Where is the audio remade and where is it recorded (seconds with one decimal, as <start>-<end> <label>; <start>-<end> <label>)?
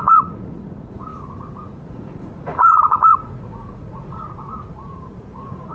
0.0-5.7 remade